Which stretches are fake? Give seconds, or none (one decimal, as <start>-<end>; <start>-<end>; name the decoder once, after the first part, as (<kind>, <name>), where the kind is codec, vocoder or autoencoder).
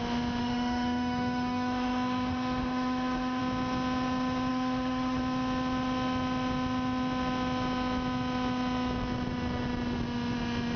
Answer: 0.4-3.4 (autoencoder, DAC-VAE); 4.5-5.2